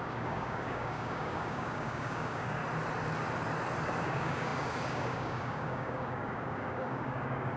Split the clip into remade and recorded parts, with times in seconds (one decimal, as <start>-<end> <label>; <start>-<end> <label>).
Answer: 0.0-2.6 remade; 2.6-4.0 recorded; 4.0-7.6 remade

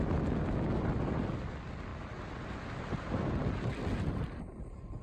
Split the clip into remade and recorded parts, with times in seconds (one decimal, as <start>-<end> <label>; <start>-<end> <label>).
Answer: 0.0-5.0 recorded

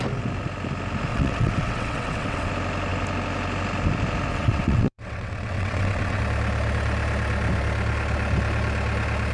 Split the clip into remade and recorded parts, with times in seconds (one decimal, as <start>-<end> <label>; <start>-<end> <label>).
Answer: 0.0-1.1 recorded; 1.1-2.5 remade; 2.5-4.3 recorded; 4.3-6.2 remade; 6.2-9.3 recorded

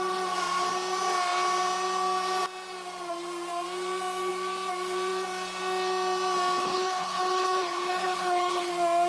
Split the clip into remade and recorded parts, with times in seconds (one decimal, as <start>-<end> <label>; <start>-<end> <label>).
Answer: 0.0-6.6 recorded; 6.6-8.7 remade; 8.7-9.1 recorded

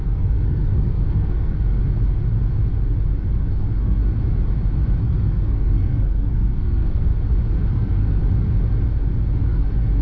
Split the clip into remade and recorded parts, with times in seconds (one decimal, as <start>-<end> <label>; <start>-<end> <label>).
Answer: 0.0-1.8 remade; 1.8-3.4 recorded; 3.4-4.0 remade; 4.0-5.0 recorded; 5.0-7.1 remade; 7.1-7.7 recorded; 7.7-8.2 remade; 8.2-9.5 recorded; 9.5-10.0 remade

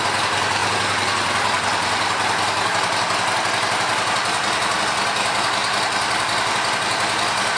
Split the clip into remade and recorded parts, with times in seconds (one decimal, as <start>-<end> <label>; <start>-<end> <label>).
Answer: 0.0-7.6 recorded

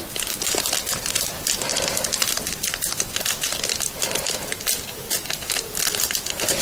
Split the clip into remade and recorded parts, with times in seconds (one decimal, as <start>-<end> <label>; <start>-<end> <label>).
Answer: 0.0-6.6 recorded